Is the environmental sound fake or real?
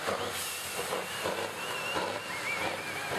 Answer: fake